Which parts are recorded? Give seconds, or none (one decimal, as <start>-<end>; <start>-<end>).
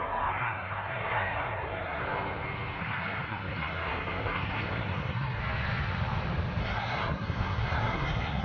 2.0-2.8; 5.4-6.6